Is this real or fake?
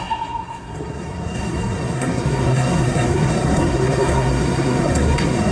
fake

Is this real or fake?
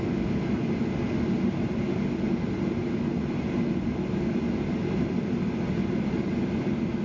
real